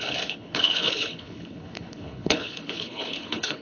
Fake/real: fake